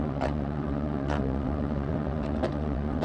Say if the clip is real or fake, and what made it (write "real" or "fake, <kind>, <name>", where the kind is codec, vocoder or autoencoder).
fake, vocoder, WaveNeXt